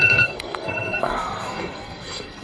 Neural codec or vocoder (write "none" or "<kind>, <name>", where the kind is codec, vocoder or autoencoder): codec, SNAC